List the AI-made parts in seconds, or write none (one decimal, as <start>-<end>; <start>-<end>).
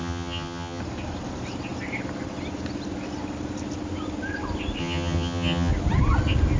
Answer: 0.0-0.8; 4.8-5.7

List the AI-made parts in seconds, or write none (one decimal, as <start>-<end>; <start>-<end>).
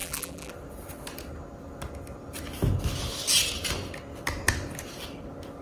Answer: 0.0-0.5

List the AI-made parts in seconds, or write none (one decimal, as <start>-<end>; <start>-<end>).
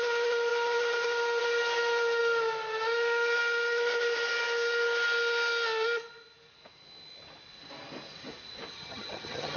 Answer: 8.7-9.6